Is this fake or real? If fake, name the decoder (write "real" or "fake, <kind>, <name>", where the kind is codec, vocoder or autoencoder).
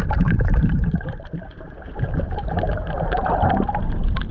fake, vocoder, BigVGAN v2